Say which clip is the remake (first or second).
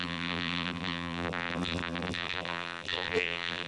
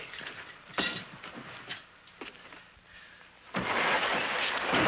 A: first